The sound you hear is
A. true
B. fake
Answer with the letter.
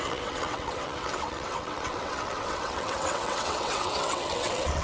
B